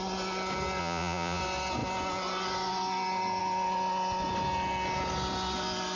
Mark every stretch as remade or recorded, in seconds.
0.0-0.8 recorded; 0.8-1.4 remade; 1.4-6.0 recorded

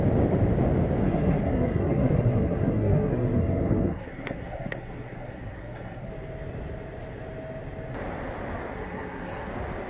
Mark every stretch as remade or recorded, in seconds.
0.0-1.0 recorded; 1.0-6.1 remade; 6.1-8.7 recorded; 8.7-9.5 remade; 9.5-9.9 recorded

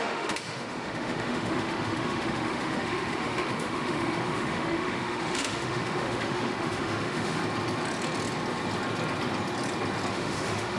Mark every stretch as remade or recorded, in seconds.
0.0-7.4 remade; 7.4-10.1 recorded; 10.1-10.8 remade

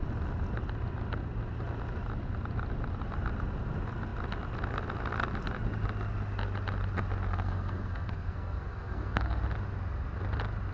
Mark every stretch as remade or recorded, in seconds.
0.0-7.3 recorded; 7.3-9.4 remade; 9.4-10.7 recorded

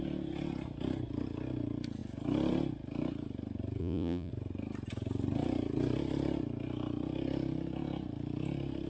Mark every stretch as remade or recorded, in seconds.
0.0-3.8 recorded; 3.8-4.3 remade; 4.3-8.9 recorded

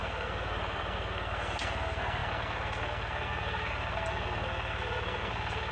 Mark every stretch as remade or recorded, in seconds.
0.0-5.7 remade